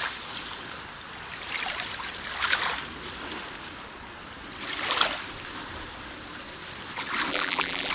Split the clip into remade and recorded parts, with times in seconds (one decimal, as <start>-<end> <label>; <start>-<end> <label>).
0.0-7.3 recorded; 7.3-7.9 remade